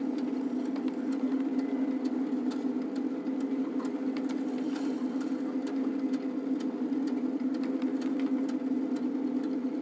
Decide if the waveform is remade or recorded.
recorded